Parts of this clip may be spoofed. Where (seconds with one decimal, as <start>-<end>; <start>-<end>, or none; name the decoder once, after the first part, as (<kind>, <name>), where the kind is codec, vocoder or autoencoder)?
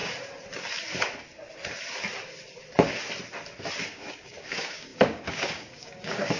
3.8-6.4 (codec, DAC)